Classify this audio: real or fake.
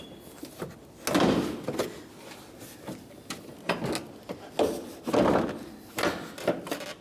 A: real